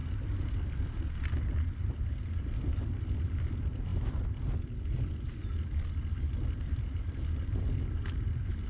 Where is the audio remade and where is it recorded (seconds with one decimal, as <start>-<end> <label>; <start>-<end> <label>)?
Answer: 0.0-8.7 recorded